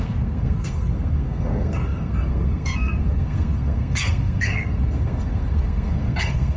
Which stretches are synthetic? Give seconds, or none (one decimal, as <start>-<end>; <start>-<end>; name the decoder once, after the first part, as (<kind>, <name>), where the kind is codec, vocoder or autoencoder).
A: 0.0-6.6 (codec, SNAC)

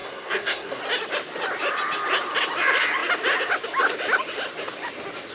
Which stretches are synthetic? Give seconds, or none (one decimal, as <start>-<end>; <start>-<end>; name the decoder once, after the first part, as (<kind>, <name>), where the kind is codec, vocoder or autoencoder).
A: 0.0-0.8 (codec, SNAC)

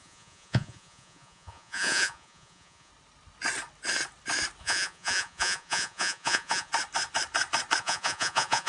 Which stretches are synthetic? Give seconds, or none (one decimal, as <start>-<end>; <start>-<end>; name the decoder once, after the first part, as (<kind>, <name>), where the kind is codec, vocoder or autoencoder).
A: 0.0-2.9 (vocoder, Vocos); 4.6-6.7; 7.8-8.7

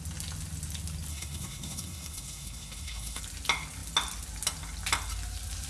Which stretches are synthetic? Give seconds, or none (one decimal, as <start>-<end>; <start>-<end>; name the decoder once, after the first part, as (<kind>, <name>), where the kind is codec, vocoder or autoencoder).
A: 1.1-3.2 (codec, SNAC)

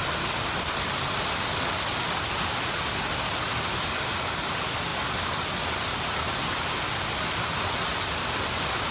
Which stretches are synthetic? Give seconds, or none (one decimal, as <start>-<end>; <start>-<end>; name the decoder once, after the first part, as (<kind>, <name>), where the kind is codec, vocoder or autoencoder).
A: none

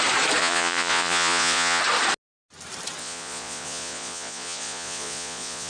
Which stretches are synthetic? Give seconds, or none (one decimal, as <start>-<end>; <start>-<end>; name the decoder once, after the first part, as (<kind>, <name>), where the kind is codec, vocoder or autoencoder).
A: 0.4-1.8 (vocoder, Vocos); 3.0-5.7

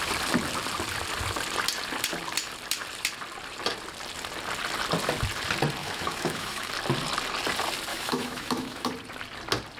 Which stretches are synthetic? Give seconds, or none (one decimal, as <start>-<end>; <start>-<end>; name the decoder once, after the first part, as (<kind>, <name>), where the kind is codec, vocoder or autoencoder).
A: 5.8-6.7 (autoencoder, DAC-VAE); 7.9-8.9